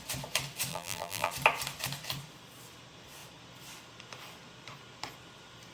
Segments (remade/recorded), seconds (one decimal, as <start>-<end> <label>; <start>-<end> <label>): 0.0-0.7 recorded; 0.7-1.3 remade; 1.3-5.7 recorded